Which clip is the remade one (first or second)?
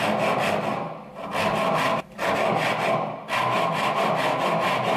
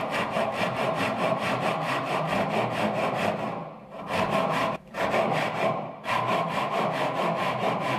second